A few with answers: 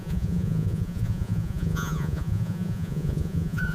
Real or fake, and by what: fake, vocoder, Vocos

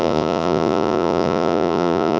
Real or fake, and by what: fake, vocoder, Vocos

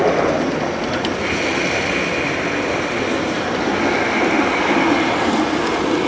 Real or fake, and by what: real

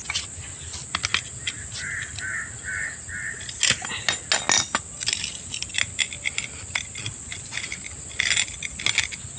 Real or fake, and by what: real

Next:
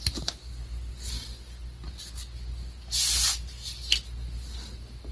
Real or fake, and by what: real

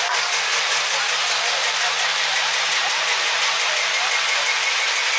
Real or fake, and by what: real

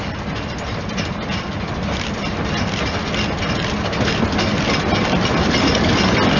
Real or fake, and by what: real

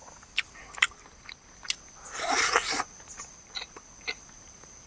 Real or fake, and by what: real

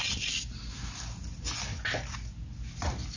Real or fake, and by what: real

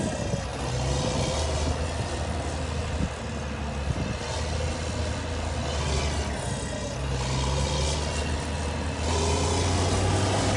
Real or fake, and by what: real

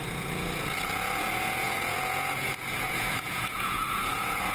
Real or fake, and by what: fake, vocoder, Vocos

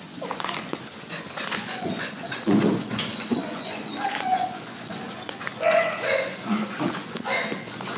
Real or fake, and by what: fake, vocoder, Vocos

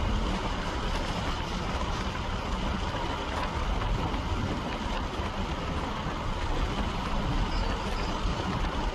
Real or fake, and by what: real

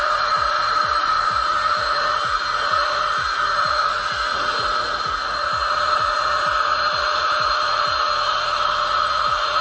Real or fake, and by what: fake, vocoder, Vocos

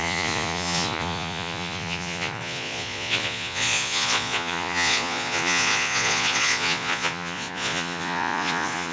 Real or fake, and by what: fake, vocoder, Vocos